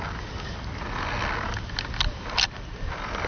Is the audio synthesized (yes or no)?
no